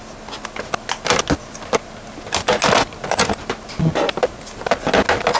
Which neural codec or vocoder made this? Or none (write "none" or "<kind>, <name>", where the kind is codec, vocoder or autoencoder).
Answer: none